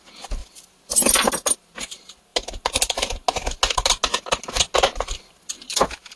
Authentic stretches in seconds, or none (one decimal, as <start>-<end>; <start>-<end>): 0.0-0.4; 1.3-6.2